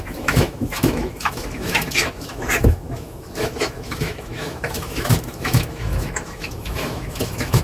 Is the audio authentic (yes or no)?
no